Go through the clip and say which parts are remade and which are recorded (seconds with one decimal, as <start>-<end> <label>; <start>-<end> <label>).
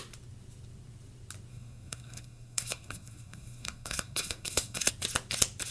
0.0-1.5 recorded; 1.5-4.9 remade; 4.9-5.7 recorded